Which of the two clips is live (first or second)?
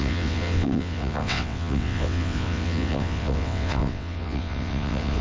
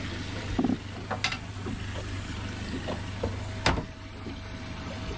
second